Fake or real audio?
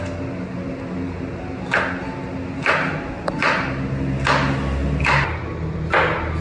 real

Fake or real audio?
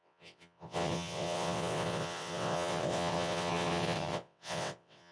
fake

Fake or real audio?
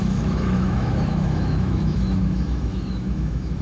fake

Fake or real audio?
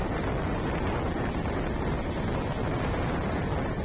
real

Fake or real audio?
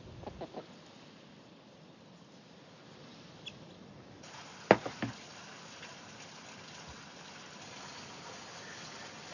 real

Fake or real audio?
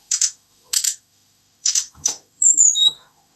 fake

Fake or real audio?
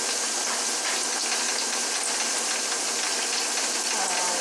real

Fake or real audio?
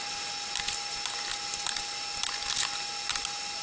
real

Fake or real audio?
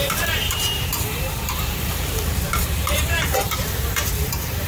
fake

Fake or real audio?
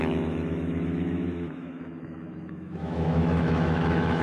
fake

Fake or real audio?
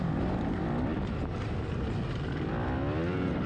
real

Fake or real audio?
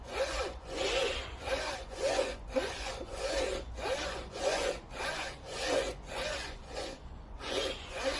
fake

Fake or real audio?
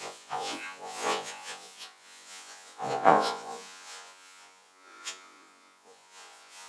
fake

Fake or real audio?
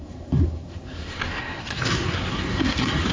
fake